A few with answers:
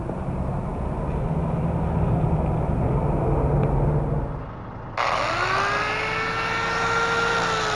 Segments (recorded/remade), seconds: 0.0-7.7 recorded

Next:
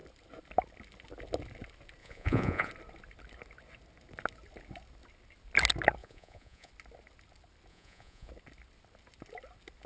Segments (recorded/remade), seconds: 0.0-2.0 recorded; 2.0-2.7 remade; 2.7-6.0 recorded; 6.0-6.7 remade; 6.7-7.7 recorded; 7.7-8.3 remade; 8.3-9.9 recorded

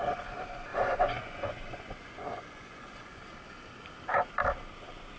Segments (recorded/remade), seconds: 0.0-3.2 remade; 3.2-5.2 recorded

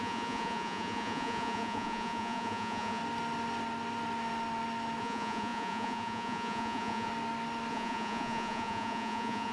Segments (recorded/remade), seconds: 0.0-3.0 remade; 3.0-5.0 recorded; 5.0-7.1 remade; 7.1-7.7 recorded; 7.7-9.5 remade

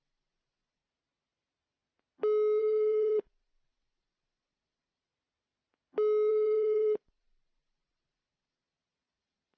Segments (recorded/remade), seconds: 0.0-0.8 remade; 0.8-2.6 recorded; 2.6-5.1 remade; 5.1-6.3 recorded; 6.3-9.6 remade